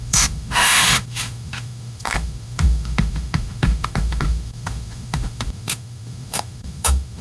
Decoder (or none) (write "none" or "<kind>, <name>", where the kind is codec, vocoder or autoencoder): autoencoder, DAC-VAE